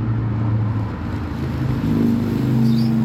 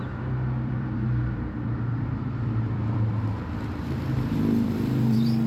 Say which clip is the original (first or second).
first